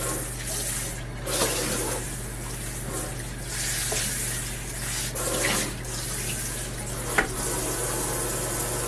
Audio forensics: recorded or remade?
recorded